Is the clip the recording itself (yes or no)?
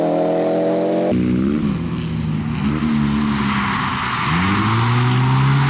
yes